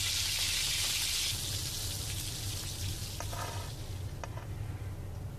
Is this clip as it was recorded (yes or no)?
yes